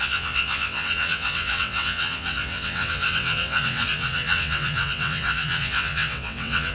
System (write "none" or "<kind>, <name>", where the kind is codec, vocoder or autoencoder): vocoder, WaveNeXt